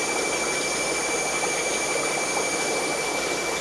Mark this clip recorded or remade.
recorded